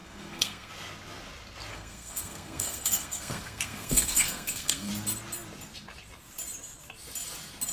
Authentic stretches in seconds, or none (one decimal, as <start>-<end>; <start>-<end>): 0.7-1.7; 4.9-7.7